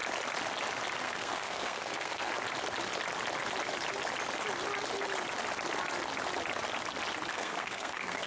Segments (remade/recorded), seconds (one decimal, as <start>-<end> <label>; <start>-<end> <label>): 0.0-1.0 recorded; 1.0-2.3 remade; 2.3-7.3 recorded; 7.3-8.3 remade

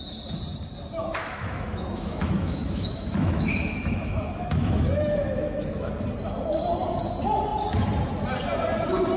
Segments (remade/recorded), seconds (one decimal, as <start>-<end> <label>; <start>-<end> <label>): 0.0-1.0 recorded; 1.0-5.9 remade; 5.9-9.2 recorded

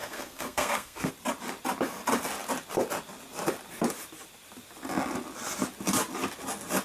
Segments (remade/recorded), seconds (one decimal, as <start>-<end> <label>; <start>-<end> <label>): 0.0-1.1 remade; 1.1-6.8 recorded

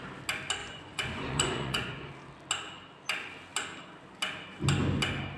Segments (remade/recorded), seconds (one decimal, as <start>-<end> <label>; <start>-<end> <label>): 0.0-0.6 recorded; 0.6-2.1 remade; 2.1-5.4 recorded

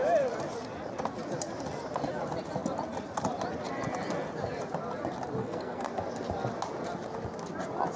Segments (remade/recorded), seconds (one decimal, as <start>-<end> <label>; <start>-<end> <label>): 0.0-5.4 recorded; 5.4-5.9 remade; 5.9-8.0 recorded